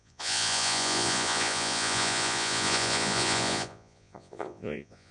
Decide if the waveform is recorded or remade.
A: remade